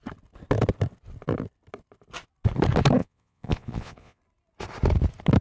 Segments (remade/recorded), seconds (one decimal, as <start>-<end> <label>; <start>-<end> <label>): 0.0-3.0 recorded; 3.0-4.2 remade; 4.2-5.4 recorded